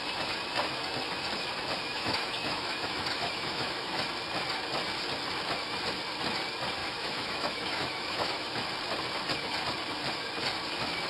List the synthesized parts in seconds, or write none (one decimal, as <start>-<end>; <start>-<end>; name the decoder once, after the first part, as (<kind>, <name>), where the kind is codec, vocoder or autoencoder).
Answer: 1.9-4.0 (autoencoder, DAC-VAE); 6.8-8.7